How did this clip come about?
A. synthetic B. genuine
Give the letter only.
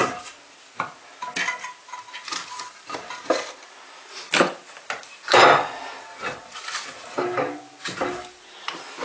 B